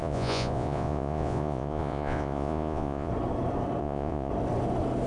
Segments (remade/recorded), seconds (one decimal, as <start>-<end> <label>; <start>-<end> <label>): 0.0-3.1 remade; 3.1-3.8 recorded; 3.8-4.3 remade; 4.3-5.1 recorded